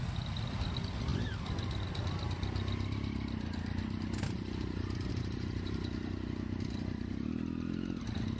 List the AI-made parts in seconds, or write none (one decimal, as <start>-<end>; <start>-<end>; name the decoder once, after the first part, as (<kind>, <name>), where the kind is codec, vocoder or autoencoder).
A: none